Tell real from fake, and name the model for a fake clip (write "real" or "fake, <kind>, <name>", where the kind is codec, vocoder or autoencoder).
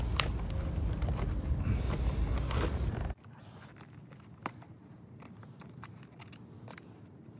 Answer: real